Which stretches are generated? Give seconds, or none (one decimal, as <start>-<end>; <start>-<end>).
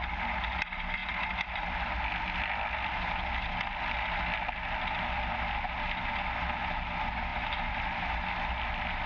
none